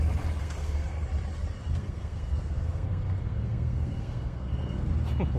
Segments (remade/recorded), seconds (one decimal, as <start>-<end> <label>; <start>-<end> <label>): 0.0-0.4 recorded; 0.4-1.0 remade; 1.0-1.7 recorded; 1.7-4.9 remade; 4.9-5.4 recorded